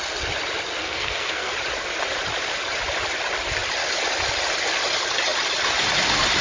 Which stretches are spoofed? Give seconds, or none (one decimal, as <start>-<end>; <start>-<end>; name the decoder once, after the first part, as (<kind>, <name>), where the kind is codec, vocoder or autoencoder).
0.8-1.5 (codec, SNAC)